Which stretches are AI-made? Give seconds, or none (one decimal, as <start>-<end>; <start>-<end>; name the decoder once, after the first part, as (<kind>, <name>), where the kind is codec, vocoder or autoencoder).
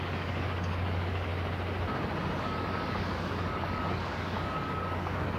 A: 0.0-1.3 (codec, DAC); 2.4-5.4